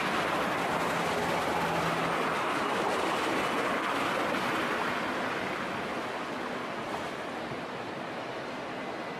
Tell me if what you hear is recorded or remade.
recorded